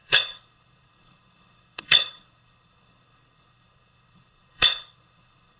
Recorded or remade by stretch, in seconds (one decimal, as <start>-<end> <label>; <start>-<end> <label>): 0.0-5.6 remade